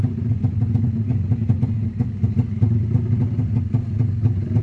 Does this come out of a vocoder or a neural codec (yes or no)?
no